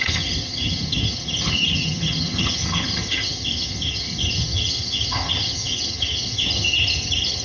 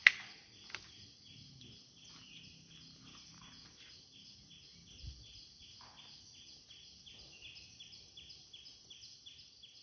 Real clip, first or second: second